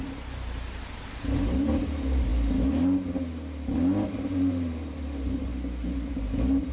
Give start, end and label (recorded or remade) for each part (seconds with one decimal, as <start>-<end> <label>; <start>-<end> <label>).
0.0-2.3 remade; 2.3-4.1 recorded; 4.1-5.5 remade; 5.5-6.1 recorded; 6.1-6.7 remade